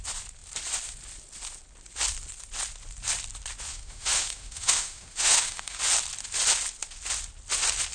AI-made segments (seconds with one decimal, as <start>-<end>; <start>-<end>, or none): 3.7-5.8